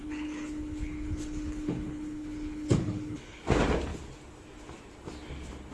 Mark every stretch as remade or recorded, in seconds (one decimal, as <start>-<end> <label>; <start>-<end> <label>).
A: 0.0-3.4 remade; 3.4-5.7 recorded